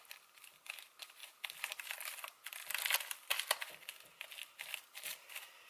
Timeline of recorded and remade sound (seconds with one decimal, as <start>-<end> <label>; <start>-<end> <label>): 0.0-5.7 recorded